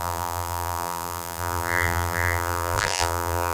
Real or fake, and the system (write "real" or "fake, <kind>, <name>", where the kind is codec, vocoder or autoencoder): fake, vocoder, BigVGAN v2